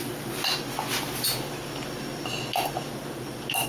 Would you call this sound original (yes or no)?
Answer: yes